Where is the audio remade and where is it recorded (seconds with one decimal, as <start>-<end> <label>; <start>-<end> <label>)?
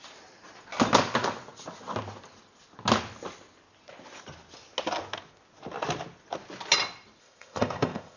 0.0-7.2 recorded; 7.2-8.2 remade